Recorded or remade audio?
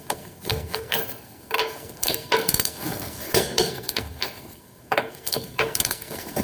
remade